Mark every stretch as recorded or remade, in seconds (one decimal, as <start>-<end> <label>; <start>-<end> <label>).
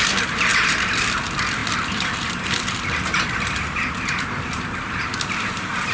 0.0-5.9 recorded